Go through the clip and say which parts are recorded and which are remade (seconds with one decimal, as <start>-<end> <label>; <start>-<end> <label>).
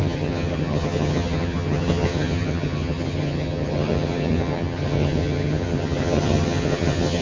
0.0-7.2 remade